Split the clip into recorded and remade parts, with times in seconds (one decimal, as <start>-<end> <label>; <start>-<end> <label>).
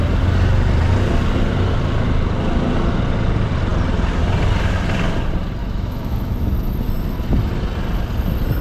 0.0-5.6 recorded; 5.6-6.5 remade; 6.5-8.6 recorded